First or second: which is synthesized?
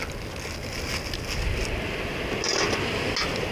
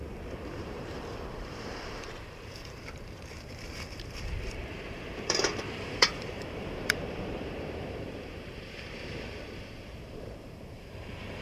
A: second